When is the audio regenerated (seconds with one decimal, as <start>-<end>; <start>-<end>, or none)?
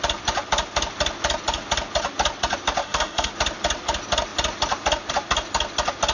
2.8-3.3